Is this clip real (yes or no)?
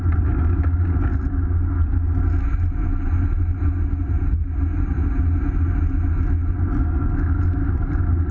yes